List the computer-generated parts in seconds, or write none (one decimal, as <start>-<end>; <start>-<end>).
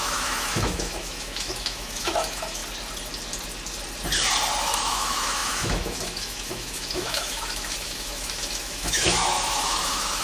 0.0-2.6; 4.6-10.2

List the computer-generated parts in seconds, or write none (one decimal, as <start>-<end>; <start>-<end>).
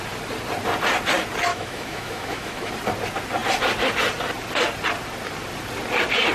1.5-2.7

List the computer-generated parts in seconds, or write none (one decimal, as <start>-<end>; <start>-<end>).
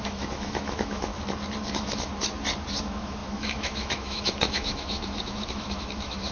0.0-1.1; 1.7-2.1; 2.8-6.3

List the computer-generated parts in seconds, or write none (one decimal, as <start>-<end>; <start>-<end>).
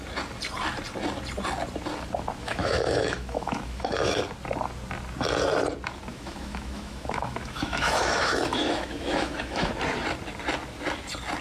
2.4-4.2; 6.1-9.7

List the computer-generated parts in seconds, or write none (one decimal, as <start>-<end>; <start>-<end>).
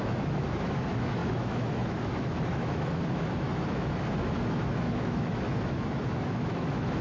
0.0-7.0